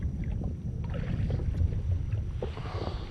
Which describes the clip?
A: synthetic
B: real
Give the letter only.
A